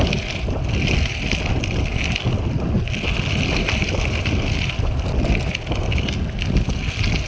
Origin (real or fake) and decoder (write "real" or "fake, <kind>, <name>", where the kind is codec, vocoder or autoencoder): real